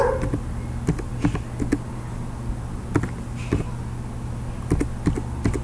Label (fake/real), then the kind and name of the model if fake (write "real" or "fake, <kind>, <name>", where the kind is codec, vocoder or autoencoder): real